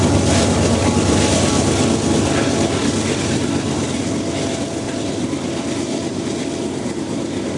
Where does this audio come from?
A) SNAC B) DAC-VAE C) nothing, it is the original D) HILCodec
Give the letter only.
C